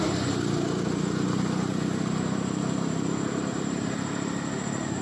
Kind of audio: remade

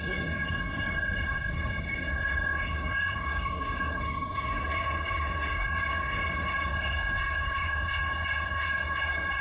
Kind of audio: remade